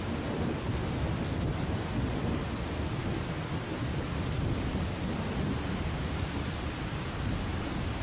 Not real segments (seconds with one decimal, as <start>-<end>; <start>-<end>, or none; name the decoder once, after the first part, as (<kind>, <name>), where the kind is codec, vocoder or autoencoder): 7.5-8.0 (vocoder, BigVGAN v2)